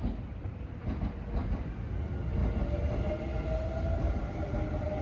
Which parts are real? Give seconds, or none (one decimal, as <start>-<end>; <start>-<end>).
0.0-1.4; 1.9-5.0